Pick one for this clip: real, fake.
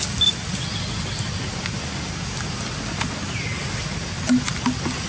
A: real